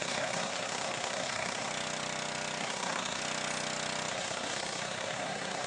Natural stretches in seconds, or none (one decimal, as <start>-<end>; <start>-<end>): 1.7-2.6; 3.2-4.1